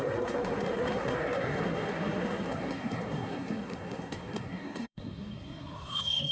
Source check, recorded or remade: remade